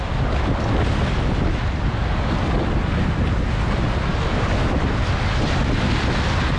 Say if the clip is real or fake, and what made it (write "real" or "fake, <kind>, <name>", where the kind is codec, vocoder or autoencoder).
real